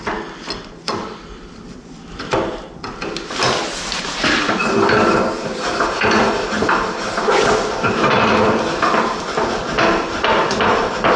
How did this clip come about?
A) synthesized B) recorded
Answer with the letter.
B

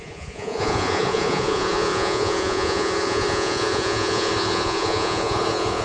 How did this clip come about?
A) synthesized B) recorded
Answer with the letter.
A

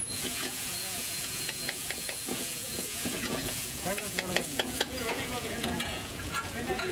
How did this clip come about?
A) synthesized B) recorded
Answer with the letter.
A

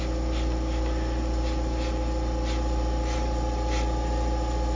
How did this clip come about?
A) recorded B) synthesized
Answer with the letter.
A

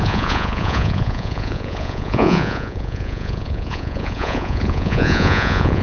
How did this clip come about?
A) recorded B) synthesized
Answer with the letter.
B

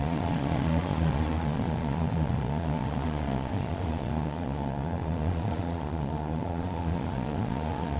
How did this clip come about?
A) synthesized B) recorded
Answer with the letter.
A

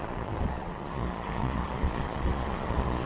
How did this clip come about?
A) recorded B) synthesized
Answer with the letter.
B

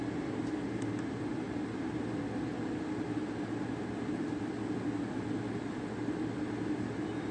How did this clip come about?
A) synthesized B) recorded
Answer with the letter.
B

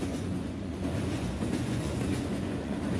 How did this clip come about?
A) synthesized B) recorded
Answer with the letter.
A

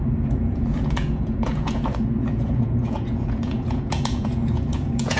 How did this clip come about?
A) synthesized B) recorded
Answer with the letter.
A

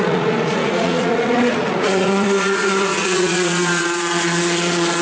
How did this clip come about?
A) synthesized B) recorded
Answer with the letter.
A